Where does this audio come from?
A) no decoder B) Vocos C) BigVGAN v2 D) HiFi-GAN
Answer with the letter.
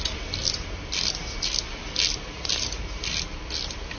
A